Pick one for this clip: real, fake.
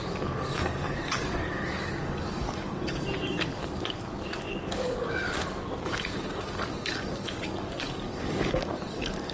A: fake